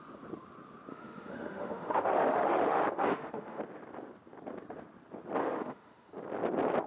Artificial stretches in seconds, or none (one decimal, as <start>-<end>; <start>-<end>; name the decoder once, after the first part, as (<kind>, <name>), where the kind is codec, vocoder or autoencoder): 0.9-3.6 (autoencoder, DAC-VAE); 5.4-6.1